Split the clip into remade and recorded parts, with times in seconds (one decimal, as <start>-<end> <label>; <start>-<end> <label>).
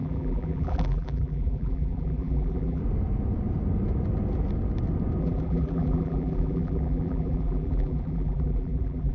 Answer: 0.0-2.8 remade; 2.8-5.2 recorded; 5.2-9.1 remade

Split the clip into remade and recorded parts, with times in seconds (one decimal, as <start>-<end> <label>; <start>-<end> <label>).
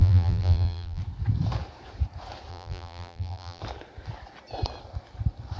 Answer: 0.0-1.0 remade; 1.0-2.5 recorded; 2.5-3.6 remade; 3.6-5.6 recorded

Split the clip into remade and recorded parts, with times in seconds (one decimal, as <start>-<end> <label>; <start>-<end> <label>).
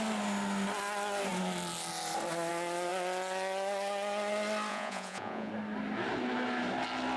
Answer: 0.0-4.7 recorded; 4.7-5.5 remade; 5.5-7.2 recorded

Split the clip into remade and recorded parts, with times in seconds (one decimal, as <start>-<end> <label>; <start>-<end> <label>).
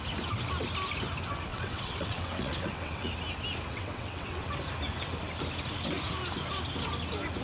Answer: 0.0-1.5 recorded; 1.5-3.1 remade; 3.1-3.7 recorded; 3.7-4.5 remade; 4.5-7.4 recorded